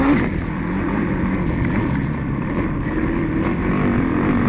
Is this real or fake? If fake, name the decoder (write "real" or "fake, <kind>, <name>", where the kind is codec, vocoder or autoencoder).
real